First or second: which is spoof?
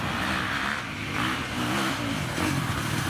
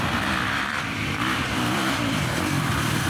second